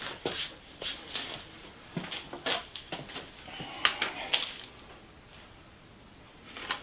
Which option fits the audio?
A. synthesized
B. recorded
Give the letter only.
B